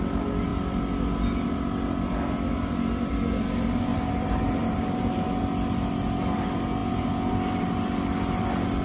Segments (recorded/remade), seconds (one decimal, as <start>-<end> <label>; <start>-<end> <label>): 0.0-3.9 recorded; 3.9-5.1 remade; 5.1-8.8 recorded